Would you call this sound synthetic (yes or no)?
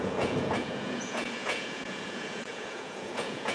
yes